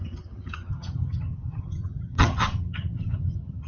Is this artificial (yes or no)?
yes